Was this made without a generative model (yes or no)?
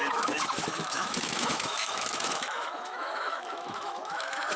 no